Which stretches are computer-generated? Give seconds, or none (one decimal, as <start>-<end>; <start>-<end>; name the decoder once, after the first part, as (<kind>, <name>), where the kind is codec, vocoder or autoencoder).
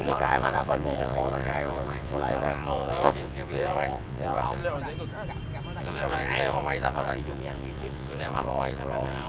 0.0-4.6 (vocoder, WaveNeXt); 5.8-9.3